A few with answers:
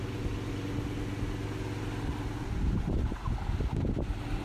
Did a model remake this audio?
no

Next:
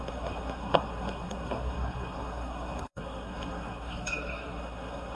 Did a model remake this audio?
yes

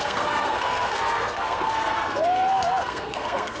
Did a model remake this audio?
yes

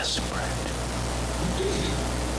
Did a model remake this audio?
no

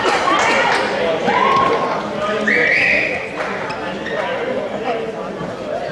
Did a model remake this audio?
no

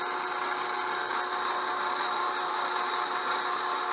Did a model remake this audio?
no